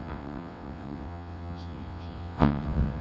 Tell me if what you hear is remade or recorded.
remade